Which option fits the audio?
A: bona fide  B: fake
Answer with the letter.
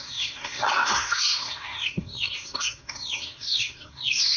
B